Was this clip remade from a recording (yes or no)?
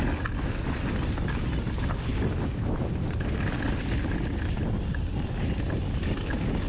no